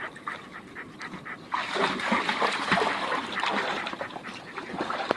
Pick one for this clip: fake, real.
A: real